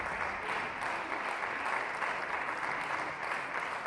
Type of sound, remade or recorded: recorded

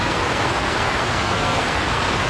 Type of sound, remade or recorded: remade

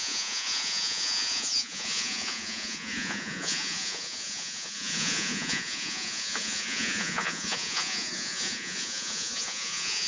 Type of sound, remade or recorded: remade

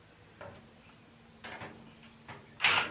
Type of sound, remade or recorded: recorded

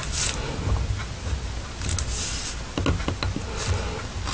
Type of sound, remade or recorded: recorded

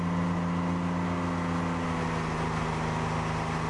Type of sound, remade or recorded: recorded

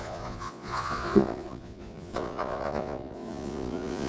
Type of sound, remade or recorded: remade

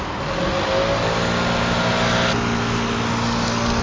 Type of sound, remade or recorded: recorded